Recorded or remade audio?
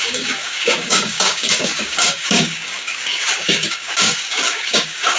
remade